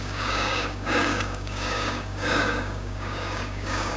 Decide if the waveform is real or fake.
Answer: fake